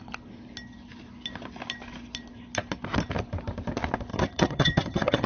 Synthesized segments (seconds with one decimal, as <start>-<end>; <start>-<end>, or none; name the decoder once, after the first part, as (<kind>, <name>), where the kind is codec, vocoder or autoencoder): 4.1-5.3 (vocoder, HiFi-GAN)